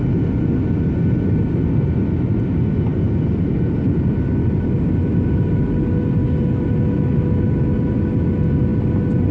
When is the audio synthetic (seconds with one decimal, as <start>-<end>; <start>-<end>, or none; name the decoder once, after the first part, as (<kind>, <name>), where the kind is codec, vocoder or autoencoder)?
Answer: none